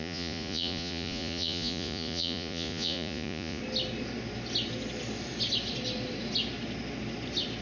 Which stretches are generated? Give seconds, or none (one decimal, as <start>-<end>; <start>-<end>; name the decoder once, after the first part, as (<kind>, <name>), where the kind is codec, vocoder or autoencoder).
0.0-3.6 (vocoder, Vocos)